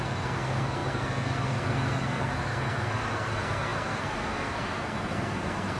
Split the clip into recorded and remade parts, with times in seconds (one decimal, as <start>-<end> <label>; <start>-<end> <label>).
0.0-5.8 remade